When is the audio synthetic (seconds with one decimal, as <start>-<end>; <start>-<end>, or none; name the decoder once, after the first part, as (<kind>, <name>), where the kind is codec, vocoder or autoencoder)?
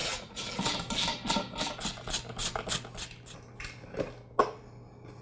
0.0-0.5 (vocoder, Vocos)